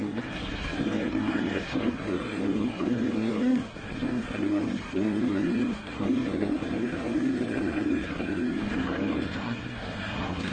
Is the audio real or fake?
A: fake